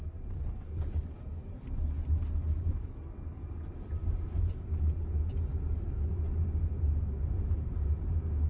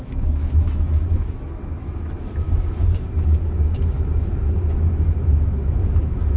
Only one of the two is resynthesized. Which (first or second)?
second